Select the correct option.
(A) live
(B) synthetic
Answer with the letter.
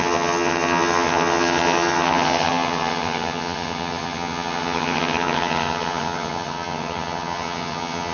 B